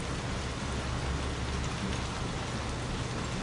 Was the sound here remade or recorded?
recorded